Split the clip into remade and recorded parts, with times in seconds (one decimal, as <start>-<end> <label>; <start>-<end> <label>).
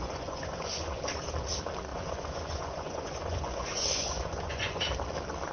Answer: 0.0-1.0 remade; 1.0-1.9 recorded; 1.9-4.8 remade; 4.8-5.5 recorded